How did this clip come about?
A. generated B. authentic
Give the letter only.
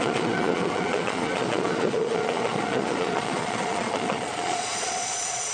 A